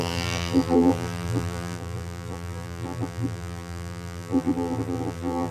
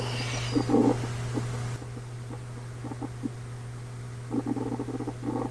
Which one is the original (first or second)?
second